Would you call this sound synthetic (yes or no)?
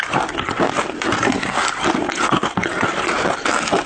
no